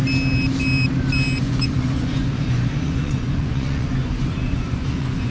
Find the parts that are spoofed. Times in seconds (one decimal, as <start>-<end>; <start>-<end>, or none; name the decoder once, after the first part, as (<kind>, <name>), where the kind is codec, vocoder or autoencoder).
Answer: 1.4-5.3 (vocoder, Vocos)